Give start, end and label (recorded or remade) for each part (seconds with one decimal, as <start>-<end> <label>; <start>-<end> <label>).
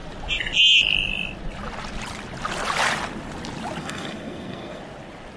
0.0-3.8 recorded; 3.8-4.8 remade; 4.8-5.4 recorded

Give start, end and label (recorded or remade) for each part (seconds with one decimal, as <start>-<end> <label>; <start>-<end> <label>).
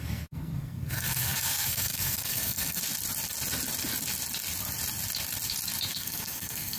0.0-2.8 remade; 2.8-5.9 recorded; 5.9-6.8 remade